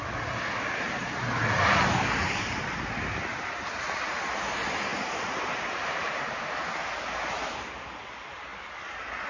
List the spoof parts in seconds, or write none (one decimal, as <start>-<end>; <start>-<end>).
4.9-6.4